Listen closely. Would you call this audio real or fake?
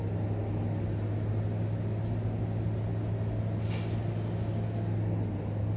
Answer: real